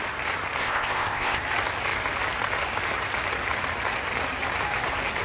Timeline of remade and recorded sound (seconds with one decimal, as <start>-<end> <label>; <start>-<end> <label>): 0.0-0.6 recorded; 0.6-1.4 remade; 1.4-5.2 recorded

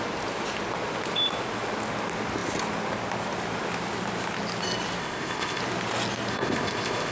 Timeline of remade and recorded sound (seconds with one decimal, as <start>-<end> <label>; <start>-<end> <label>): 0.0-5.0 recorded; 5.0-5.6 remade; 5.6-6.3 recorded; 6.3-7.1 remade